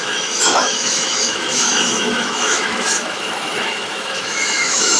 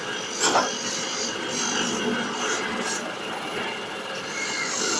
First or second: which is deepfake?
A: first